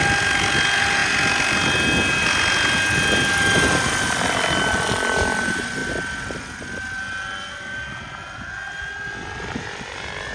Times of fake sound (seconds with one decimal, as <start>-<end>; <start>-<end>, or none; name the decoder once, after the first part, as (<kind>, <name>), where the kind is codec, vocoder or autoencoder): none